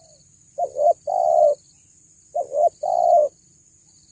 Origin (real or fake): real